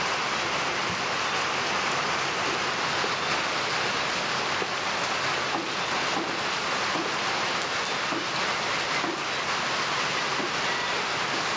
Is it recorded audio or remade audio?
recorded